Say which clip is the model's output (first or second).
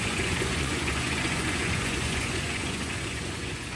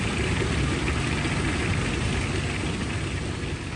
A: first